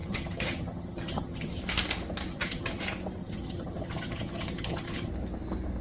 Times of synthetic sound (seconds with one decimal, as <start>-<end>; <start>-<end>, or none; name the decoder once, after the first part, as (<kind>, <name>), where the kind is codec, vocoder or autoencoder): 0.0-1.6 (vocoder, HiFi-GAN); 2.3-2.8; 3.2-5.1